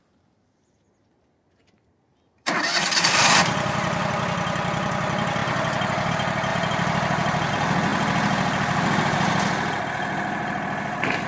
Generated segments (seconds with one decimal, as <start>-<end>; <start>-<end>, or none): 0.0-4.1; 6.5-7.5; 7.9-9.8